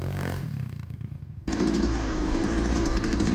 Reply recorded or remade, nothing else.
remade